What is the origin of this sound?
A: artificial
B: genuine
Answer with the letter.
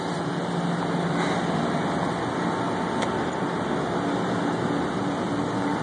B